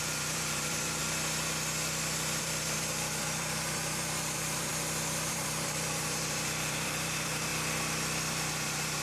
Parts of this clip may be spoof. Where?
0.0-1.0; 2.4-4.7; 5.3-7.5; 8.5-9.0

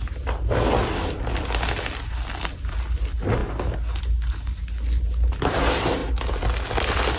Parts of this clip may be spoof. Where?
none

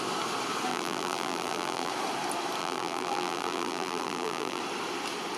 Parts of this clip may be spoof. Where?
0.7-1.9; 2.6-4.6